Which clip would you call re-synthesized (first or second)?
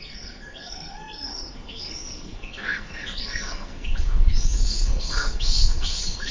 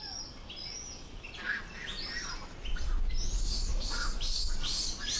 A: first